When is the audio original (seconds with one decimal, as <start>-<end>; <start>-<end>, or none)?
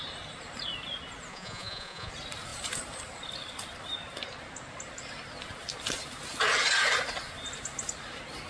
0.0-1.3; 2.1-8.5